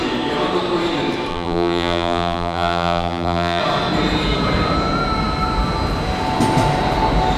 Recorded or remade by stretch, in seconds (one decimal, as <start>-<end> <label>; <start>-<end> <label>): 0.0-1.3 recorded; 1.3-3.6 remade; 3.6-7.4 recorded